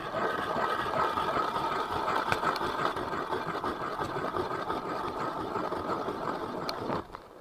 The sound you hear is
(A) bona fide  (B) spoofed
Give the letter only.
A